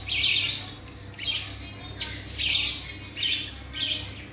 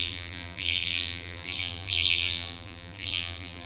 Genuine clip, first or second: first